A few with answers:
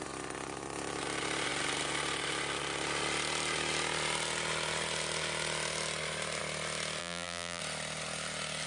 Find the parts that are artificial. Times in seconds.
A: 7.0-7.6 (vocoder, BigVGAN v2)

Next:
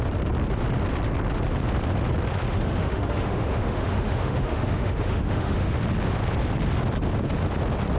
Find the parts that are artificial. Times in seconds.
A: 2.5-5.8 (autoencoder, DAC-VAE)

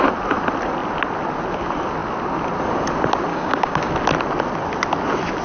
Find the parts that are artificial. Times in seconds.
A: 3.3-3.9 (codec, DAC)

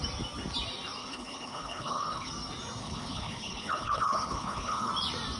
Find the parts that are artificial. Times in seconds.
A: 1.0-2.3 (codec, HILCodec); 2.8-4.9

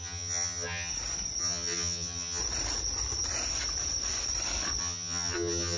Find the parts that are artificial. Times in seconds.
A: 0.0-0.9 (vocoder, HiFi-GAN); 1.4-2.4; 4.8-5.8

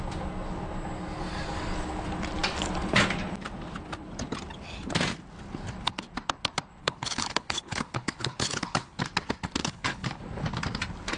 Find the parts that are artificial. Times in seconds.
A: 6.8-9.0 (codec, HILCodec); 9.6-10.2

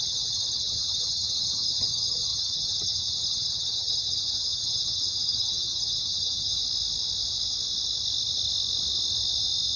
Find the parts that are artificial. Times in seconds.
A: 0.0-6.6 (vocoder, HiFi-GAN)

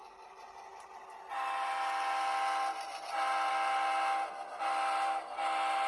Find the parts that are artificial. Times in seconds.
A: none